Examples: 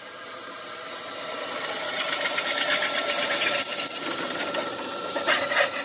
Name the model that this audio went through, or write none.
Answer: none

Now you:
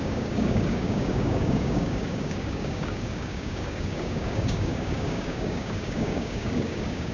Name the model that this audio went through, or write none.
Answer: codec, DAC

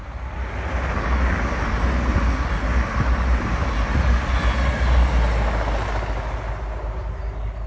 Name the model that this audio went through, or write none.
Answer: none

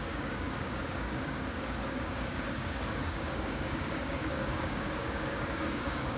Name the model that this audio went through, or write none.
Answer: codec, DAC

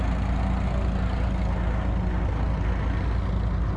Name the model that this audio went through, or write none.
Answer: none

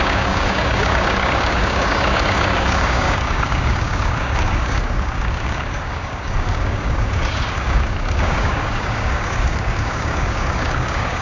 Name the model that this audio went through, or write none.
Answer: codec, DAC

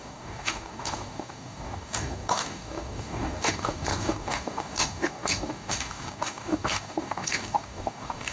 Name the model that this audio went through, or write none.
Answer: codec, DAC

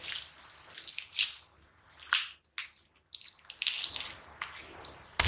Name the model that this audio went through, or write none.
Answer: none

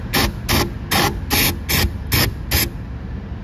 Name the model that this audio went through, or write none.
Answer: none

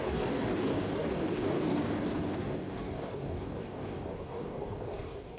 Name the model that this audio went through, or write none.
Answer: codec, DAC